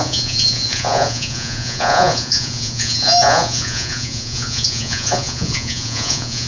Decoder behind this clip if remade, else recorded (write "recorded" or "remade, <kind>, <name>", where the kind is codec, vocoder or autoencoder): remade, vocoder, Vocos